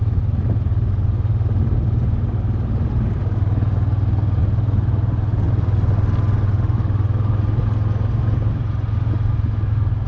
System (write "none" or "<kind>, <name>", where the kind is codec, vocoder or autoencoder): none